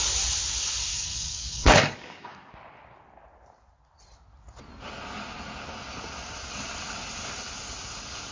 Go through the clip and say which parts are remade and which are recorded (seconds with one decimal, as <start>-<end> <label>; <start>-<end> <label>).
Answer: 0.0-0.9 recorded; 0.9-2.5 remade; 2.5-8.3 recorded